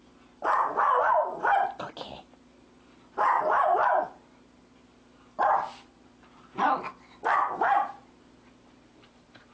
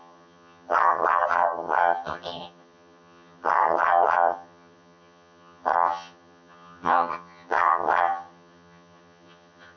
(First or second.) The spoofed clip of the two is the second